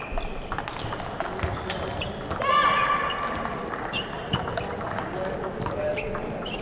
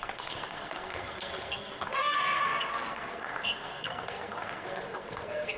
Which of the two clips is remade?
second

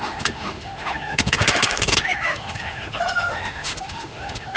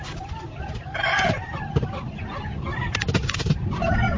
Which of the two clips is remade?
first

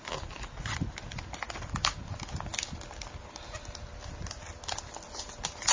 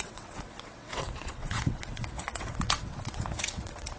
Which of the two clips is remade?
second